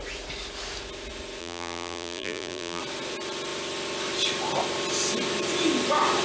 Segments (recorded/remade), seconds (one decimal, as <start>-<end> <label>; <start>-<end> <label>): 0.0-1.4 recorded; 1.4-2.8 remade; 2.8-6.2 recorded